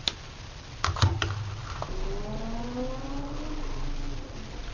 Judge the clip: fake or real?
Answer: real